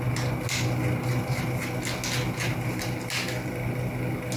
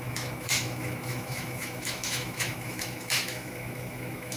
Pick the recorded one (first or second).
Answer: first